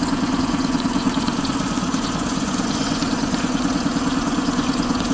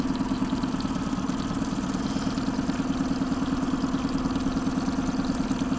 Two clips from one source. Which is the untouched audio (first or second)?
second